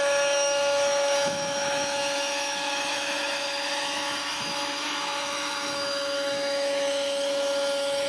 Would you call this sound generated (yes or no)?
yes